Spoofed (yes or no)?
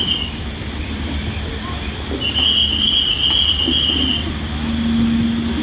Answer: no